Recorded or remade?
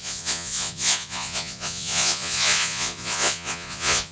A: remade